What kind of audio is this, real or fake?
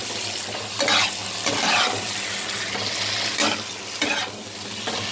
real